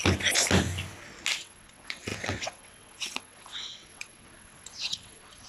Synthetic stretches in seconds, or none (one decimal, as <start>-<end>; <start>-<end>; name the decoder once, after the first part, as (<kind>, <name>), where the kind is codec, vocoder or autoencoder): 1.4-5.5 (vocoder, WaveNeXt)